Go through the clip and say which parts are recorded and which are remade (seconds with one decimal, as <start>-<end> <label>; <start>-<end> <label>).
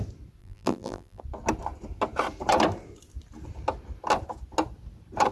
0.0-0.4 recorded; 0.4-1.2 remade; 1.2-5.3 recorded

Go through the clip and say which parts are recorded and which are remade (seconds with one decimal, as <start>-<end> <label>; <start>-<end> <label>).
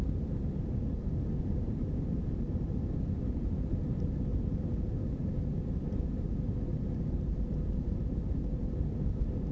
0.0-4.3 remade; 4.3-4.8 recorded; 4.8-9.5 remade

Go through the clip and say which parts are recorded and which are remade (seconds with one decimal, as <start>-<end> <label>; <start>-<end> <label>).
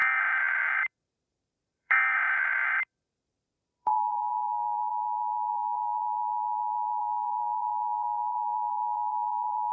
0.0-4.9 remade; 4.9-5.5 recorded; 5.5-6.0 remade; 6.0-7.0 recorded; 7.0-9.7 remade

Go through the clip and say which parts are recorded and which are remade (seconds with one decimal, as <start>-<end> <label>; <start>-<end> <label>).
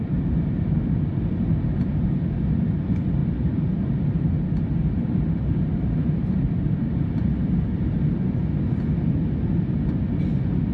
0.0-1.7 recorded; 1.7-2.4 remade; 2.4-3.2 recorded; 3.2-7.3 remade; 7.3-10.7 recorded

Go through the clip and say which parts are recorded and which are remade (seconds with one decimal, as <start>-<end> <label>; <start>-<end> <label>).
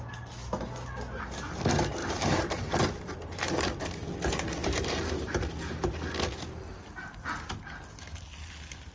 0.0-2.0 recorded; 2.0-2.6 remade; 2.6-4.6 recorded; 4.6-5.3 remade; 5.3-8.9 recorded